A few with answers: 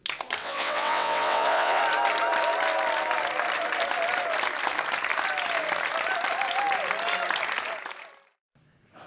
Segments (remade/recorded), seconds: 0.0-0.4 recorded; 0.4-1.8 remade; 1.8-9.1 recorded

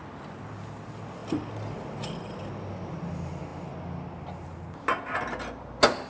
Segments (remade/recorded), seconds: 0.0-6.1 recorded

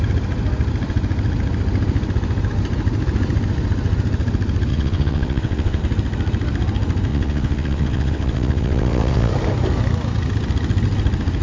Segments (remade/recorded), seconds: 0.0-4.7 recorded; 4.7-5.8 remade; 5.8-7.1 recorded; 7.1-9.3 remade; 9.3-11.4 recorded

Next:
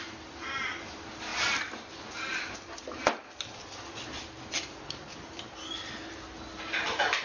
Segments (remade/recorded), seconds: 0.0-7.2 recorded

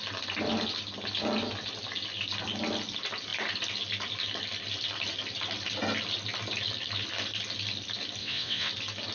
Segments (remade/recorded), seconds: 0.0-8.2 recorded; 8.2-8.7 remade; 8.7-9.1 recorded